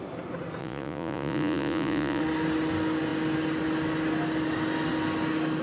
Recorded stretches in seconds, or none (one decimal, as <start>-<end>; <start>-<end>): 0.0-0.6; 2.2-5.6